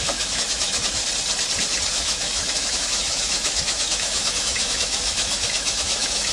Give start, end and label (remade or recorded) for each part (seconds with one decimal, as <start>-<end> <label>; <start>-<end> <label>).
0.0-1.0 remade; 1.0-1.9 recorded; 1.9-6.3 remade